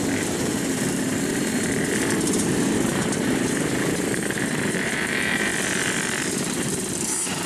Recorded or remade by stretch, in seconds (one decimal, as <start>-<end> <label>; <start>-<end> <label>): 0.0-5.5 remade; 5.5-6.3 recorded; 6.3-7.5 remade